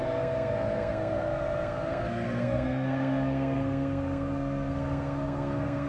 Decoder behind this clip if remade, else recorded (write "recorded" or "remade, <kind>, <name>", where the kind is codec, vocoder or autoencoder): remade, codec, SNAC